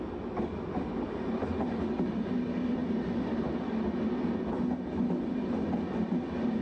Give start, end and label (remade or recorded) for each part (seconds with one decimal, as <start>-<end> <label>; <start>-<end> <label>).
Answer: 0.0-6.6 recorded